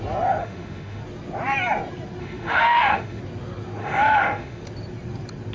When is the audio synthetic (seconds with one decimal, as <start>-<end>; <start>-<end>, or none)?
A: 0.4-1.0; 2.2-3.2; 3.8-4.6